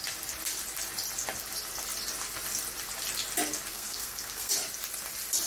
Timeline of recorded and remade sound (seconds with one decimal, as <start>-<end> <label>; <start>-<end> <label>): 0.0-3.7 recorded; 3.7-4.5 remade; 4.5-5.5 recorded